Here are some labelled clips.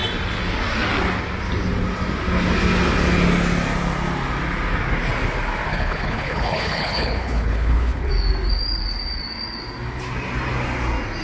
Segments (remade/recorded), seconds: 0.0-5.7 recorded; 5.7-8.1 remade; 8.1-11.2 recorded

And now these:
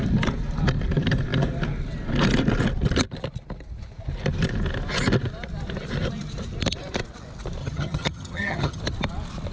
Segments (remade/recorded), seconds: 0.0-7.6 recorded; 7.6-8.8 remade; 8.8-9.5 recorded

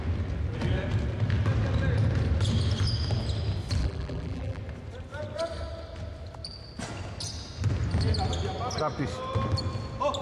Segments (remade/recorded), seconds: 0.0-3.8 recorded; 3.8-4.6 remade; 4.6-10.2 recorded

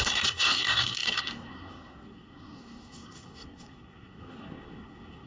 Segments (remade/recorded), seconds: 0.0-5.3 remade

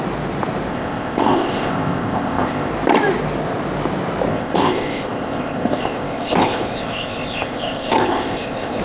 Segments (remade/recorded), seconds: 0.0-0.7 recorded; 0.7-2.7 remade; 2.7-4.3 recorded; 4.3-8.8 remade

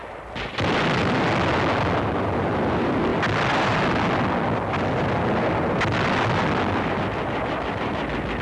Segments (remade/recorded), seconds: 0.0-8.4 recorded

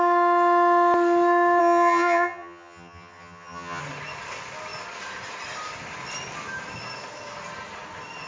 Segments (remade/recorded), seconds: 0.0-1.6 recorded; 1.6-3.8 remade; 3.8-8.3 recorded

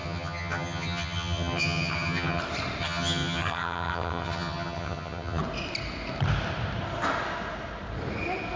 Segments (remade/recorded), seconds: 0.0-2.4 remade; 2.4-2.8 recorded; 2.8-5.4 remade; 5.4-8.6 recorded